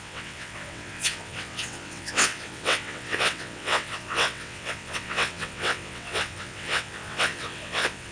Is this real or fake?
fake